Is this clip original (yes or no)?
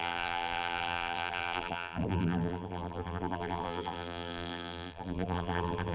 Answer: no